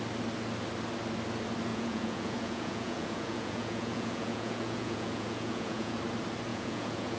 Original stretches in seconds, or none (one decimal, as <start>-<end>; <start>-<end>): 0.0-1.7; 6.0-6.5